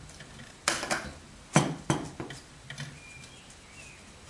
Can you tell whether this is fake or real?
real